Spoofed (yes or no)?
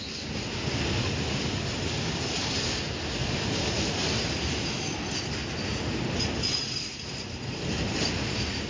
no